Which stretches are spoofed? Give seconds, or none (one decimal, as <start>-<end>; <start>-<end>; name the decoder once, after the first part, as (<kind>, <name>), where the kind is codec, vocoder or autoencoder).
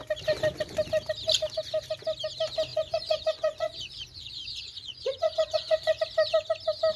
2.7-6.0 (vocoder, Vocos)